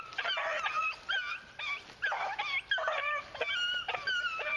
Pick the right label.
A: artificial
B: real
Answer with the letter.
B